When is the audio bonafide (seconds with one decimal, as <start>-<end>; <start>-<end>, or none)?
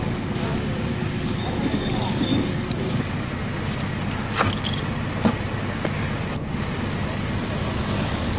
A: 3.4-7.8